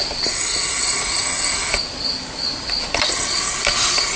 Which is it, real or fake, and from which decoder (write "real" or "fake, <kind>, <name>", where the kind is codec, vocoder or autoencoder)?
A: real